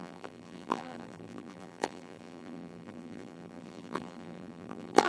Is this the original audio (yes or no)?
no